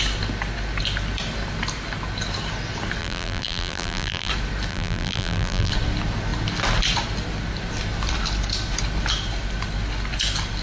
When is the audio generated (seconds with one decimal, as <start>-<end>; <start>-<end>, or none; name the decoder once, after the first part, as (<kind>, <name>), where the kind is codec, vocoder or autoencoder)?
3.0-4.3 (vocoder, BigVGAN v2); 4.7-5.7